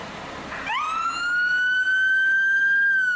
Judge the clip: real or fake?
real